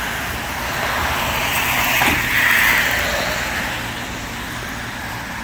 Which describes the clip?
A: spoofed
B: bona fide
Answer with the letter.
B